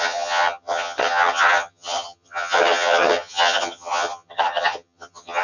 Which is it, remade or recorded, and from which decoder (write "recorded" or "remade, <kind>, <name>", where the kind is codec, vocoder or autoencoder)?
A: remade, vocoder, HiFi-GAN